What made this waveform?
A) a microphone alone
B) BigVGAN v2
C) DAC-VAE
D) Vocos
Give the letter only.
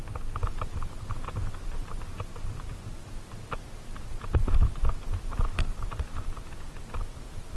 A